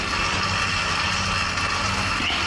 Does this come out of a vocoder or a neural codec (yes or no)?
no